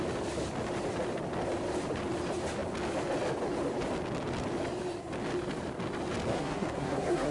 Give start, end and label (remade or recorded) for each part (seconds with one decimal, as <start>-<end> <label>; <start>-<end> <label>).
0.0-6.3 recorded; 6.3-7.3 remade